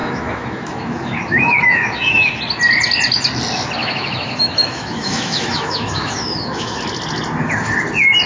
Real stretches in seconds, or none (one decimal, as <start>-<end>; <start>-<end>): 2.4-3.8; 6.8-8.3